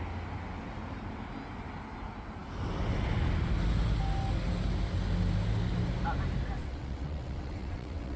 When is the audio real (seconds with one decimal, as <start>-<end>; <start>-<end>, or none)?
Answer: 0.0-6.6